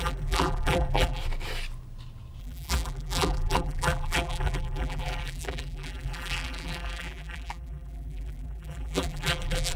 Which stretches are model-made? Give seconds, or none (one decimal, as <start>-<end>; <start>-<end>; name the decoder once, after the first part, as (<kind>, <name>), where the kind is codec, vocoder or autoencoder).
0.0-1.2 (vocoder, BigVGAN v2); 2.4-9.8